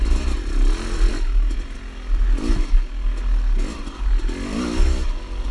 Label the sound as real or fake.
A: real